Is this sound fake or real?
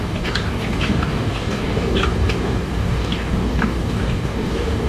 fake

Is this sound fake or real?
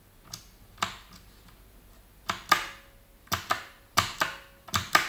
real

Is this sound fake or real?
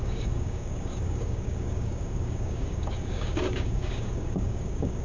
fake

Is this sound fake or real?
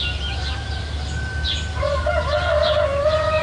real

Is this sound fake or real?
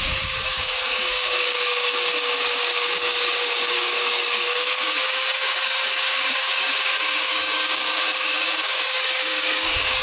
fake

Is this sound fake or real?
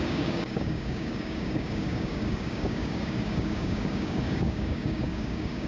fake